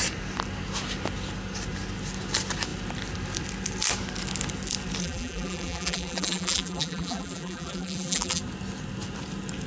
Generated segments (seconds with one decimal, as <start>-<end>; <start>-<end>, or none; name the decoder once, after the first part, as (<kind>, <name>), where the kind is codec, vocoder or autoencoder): 5.0-8.4 (vocoder, BigVGAN v2)